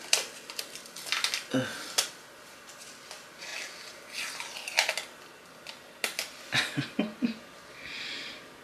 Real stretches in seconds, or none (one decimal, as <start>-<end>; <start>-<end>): 0.0-8.6